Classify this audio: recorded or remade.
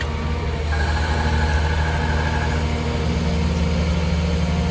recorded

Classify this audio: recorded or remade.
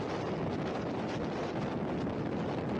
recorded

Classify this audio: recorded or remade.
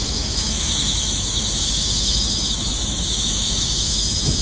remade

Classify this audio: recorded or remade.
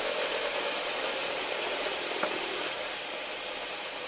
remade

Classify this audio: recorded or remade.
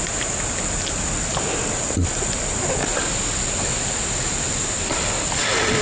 recorded